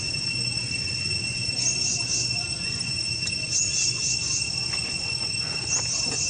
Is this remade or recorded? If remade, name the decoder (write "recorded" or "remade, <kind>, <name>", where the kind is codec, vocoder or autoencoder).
remade, vocoder, Vocos